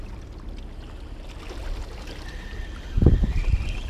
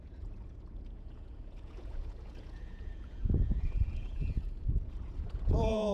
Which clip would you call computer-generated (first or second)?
second